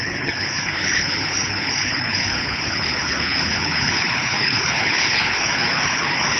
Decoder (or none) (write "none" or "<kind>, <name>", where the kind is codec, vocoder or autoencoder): codec, HILCodec